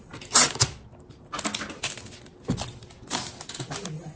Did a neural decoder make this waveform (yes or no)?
no